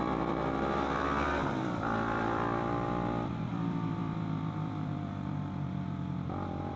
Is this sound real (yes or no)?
no